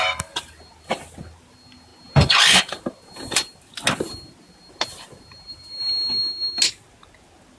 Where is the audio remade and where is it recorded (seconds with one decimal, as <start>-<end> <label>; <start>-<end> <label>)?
0.0-7.6 recorded